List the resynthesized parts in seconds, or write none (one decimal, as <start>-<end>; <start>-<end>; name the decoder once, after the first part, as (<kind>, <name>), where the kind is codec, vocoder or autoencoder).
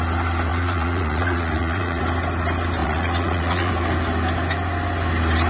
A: 0.5-2.0 (vocoder, Vocos); 2.8-3.7